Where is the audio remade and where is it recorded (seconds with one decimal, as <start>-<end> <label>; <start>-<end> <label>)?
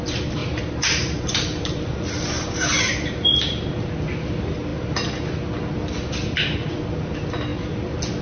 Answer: 0.0-0.4 recorded; 0.4-3.9 remade; 3.9-8.2 recorded